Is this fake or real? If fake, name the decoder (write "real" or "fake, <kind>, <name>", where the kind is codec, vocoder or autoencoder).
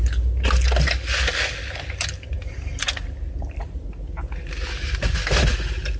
real